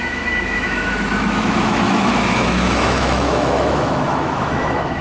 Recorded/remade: remade